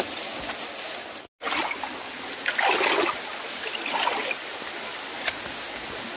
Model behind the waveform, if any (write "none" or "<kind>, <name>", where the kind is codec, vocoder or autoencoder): none